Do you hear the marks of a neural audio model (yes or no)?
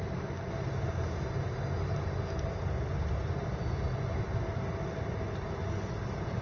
no